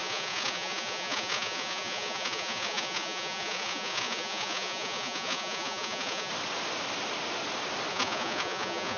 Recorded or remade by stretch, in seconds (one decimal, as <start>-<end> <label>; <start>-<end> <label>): 0.0-6.3 remade; 6.3-7.9 recorded; 7.9-9.0 remade